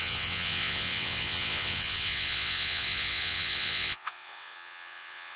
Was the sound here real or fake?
fake